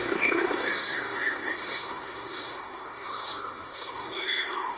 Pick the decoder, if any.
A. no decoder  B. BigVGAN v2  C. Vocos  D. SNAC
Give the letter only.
D